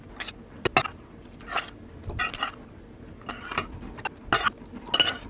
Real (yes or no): yes